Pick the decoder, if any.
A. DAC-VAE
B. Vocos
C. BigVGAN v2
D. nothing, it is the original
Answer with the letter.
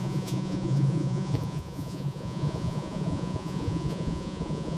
B